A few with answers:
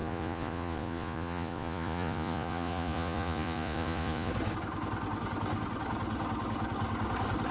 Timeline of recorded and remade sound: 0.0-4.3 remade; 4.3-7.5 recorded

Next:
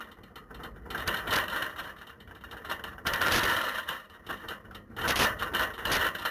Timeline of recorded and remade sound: 0.0-1.6 recorded; 1.6-5.4 remade; 5.4-6.3 recorded

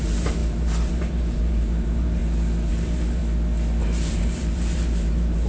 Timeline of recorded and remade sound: 0.0-2.2 remade; 2.2-2.7 recorded; 2.7-3.2 remade; 3.2-3.8 recorded; 3.8-5.5 remade